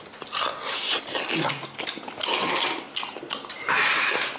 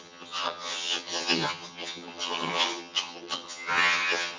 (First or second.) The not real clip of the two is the second